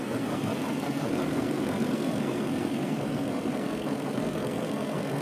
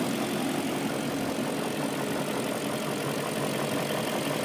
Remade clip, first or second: first